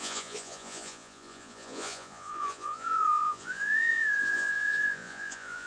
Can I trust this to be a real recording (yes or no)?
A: no